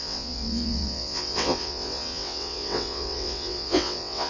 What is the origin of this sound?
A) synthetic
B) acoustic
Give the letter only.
A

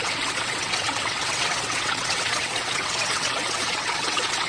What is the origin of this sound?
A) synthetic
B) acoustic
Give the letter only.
A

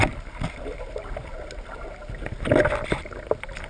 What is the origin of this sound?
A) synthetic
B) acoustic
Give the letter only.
B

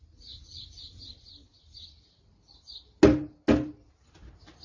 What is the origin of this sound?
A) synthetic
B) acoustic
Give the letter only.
B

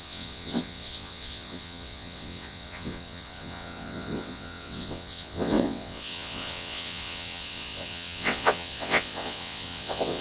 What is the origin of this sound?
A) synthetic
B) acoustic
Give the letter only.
A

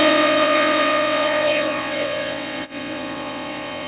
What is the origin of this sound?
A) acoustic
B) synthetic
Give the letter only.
B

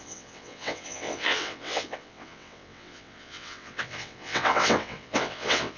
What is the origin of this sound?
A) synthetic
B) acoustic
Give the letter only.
A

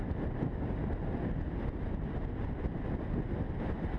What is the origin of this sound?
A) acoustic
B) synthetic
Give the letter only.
A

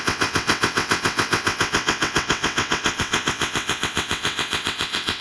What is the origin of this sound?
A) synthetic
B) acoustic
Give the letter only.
A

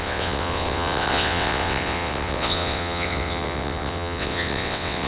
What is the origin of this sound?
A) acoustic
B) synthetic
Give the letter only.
B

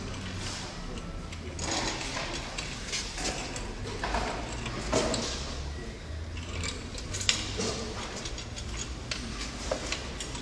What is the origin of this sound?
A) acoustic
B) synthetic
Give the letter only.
A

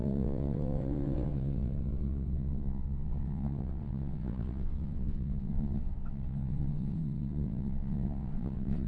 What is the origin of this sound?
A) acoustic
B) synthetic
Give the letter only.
B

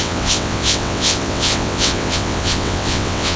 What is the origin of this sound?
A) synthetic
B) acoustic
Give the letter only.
A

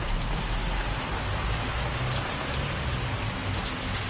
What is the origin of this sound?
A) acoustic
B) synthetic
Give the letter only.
A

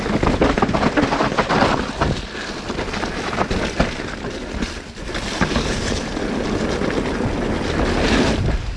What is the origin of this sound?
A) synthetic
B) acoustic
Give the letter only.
B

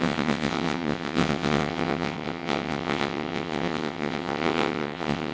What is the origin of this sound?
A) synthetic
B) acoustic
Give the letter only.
A